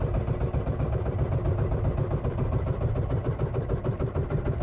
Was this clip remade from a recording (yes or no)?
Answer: no